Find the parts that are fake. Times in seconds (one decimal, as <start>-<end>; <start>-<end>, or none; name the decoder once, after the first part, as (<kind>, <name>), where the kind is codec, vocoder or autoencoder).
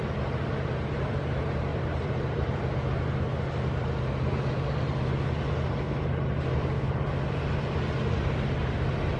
1.7-2.6 (vocoder, BigVGAN v2)